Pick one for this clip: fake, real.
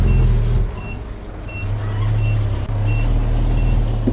real